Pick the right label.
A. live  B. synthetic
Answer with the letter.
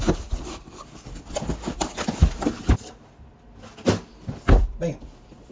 A